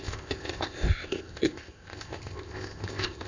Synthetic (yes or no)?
yes